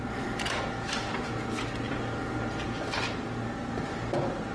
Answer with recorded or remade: recorded